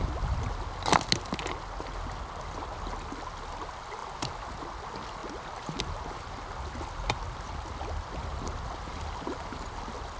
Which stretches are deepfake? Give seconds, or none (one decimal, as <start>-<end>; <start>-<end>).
none